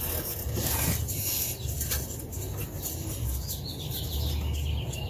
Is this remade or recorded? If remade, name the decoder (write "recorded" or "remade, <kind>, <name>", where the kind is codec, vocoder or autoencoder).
recorded